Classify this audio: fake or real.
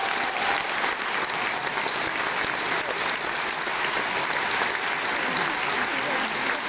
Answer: real